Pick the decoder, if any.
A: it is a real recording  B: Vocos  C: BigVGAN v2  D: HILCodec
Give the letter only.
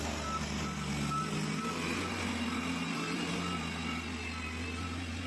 A